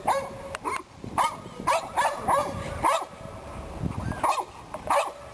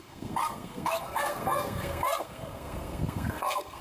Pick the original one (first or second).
first